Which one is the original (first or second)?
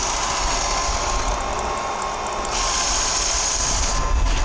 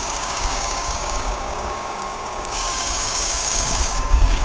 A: first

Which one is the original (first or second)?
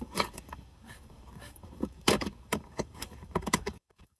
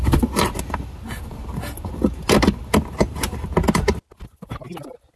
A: second